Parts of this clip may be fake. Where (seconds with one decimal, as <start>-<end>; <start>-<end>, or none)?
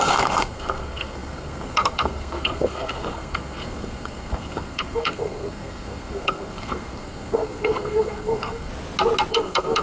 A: 0.0-8.7; 9.3-9.8